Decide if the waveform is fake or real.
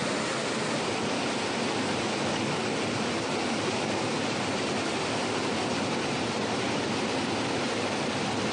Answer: real